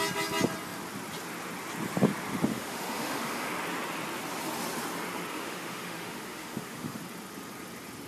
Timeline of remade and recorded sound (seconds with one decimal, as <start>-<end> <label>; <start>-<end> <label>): 0.0-2.5 recorded; 2.5-3.5 remade; 3.5-5.3 recorded; 5.3-7.0 remade; 7.0-8.1 recorded